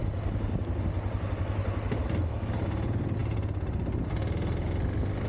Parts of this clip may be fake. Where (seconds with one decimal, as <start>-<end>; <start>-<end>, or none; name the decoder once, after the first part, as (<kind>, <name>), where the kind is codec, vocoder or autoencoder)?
none